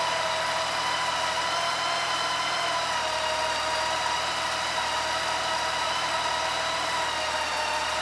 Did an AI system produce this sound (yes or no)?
no